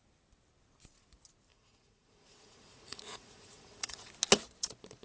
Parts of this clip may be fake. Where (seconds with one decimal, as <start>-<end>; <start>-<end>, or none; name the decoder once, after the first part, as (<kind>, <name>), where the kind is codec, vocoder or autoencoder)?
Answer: 1.5-4.1 (vocoder, Vocos)